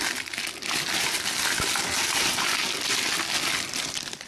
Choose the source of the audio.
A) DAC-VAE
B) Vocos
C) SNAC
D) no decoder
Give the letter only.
D